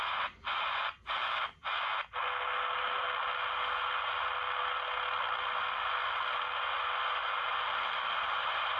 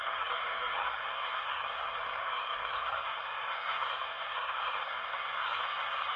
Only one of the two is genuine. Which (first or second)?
first